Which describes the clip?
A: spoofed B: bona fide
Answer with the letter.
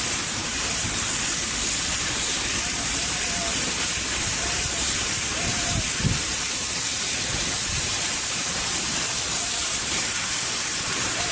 A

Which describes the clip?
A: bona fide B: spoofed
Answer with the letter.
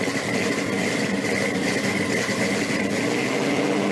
A